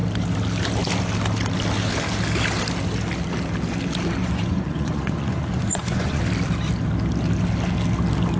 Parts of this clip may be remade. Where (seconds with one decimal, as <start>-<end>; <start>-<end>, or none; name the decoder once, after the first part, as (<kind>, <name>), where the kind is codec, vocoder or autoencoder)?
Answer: 4.2-6.2 (vocoder, Vocos)